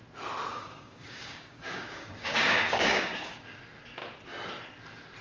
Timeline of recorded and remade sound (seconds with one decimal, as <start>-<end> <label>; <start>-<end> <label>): 0.0-0.5 recorded; 0.5-3.6 remade; 3.6-5.2 recorded